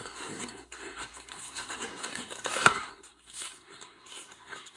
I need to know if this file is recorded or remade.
remade